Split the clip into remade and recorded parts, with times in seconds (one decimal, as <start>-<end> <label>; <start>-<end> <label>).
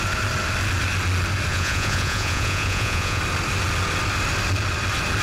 0.0-1.5 recorded; 1.5-3.2 remade; 3.2-5.2 recorded